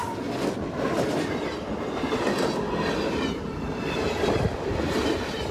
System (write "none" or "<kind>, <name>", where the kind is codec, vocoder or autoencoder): none